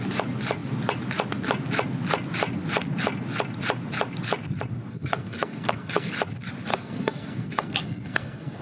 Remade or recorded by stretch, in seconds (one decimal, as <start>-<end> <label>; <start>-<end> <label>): 0.0-4.9 recorded; 4.9-6.1 remade; 6.1-6.7 recorded; 6.7-8.6 remade